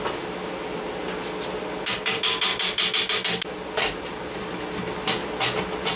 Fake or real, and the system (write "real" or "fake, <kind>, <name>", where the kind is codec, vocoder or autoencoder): real